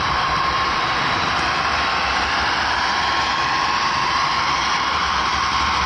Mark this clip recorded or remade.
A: remade